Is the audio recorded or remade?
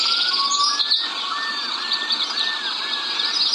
recorded